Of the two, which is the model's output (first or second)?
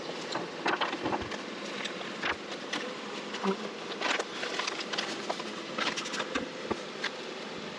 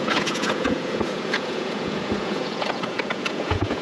second